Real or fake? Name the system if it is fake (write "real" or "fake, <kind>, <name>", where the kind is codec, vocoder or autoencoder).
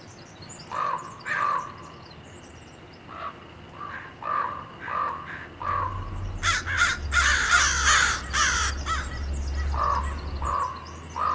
real